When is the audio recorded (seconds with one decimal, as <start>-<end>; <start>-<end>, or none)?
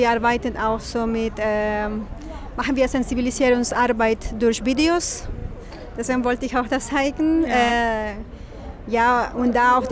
0.0-9.9